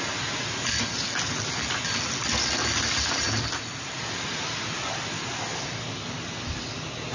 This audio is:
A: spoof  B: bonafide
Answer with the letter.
B